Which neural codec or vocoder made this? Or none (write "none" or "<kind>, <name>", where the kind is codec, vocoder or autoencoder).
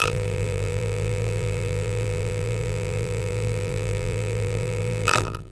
vocoder, BigVGAN v2